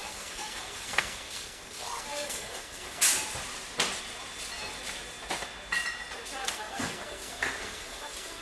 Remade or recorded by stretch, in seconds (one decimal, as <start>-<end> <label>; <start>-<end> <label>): 0.0-3.0 remade; 3.0-6.4 recorded; 6.4-8.4 remade